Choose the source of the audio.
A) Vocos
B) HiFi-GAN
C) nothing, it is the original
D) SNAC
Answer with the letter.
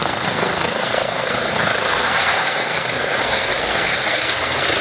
D